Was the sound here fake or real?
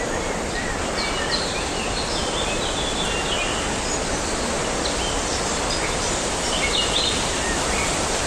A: real